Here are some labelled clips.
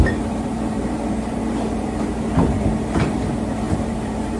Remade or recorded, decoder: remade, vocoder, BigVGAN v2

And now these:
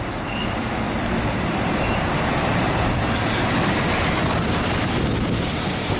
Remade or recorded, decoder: recorded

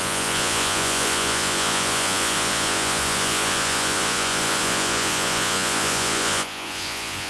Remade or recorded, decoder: remade, vocoder, Vocos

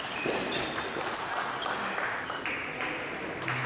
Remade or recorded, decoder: recorded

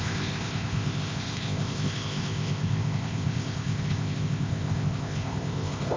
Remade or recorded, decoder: remade, codec, ZipCodec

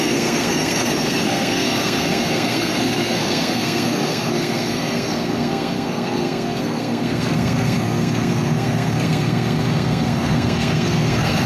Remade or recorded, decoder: remade, codec, SNAC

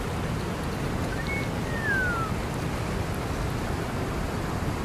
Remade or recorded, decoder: recorded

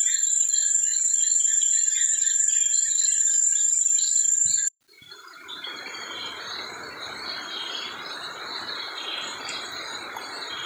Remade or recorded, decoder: remade, vocoder, BigVGAN v2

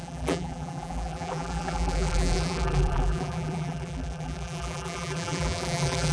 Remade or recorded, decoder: remade, vocoder, BigVGAN v2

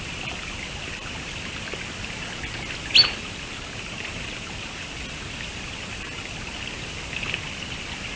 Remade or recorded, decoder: recorded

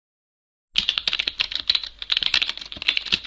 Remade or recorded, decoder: recorded